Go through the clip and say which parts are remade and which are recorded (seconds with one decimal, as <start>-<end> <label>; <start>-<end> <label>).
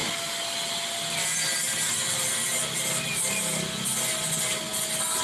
0.0-5.2 recorded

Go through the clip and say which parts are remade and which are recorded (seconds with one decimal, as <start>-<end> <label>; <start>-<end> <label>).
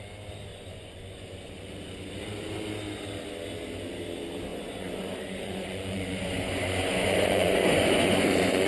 0.0-0.5 recorded; 0.5-1.5 remade; 1.5-4.5 recorded; 4.5-8.7 remade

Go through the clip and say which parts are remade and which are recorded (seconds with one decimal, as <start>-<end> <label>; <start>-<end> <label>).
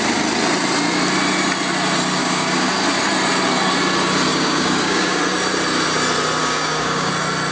0.0-2.2 recorded; 2.2-2.7 remade; 2.7-4.3 recorded; 4.3-5.2 remade; 5.2-6.4 recorded; 6.4-7.1 remade; 7.1-7.5 recorded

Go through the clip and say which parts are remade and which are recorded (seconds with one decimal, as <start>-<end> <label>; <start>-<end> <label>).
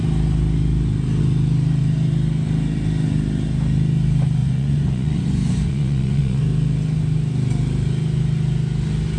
0.0-4.4 recorded; 4.4-6.4 remade; 6.4-9.2 recorded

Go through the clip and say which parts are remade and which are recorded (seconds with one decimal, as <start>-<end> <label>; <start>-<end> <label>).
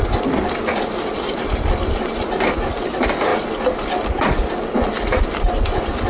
0.0-6.1 recorded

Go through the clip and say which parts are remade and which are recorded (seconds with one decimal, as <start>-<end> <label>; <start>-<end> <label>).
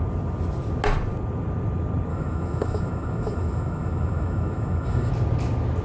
0.0-2.1 recorded; 2.1-5.1 remade; 5.1-5.8 recorded